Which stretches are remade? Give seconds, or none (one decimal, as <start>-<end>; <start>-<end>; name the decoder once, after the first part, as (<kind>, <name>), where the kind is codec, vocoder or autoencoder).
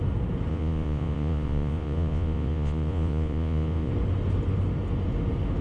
0.5-3.9 (vocoder, Vocos)